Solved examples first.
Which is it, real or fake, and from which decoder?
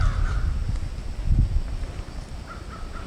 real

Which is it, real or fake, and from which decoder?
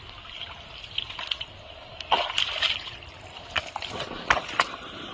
real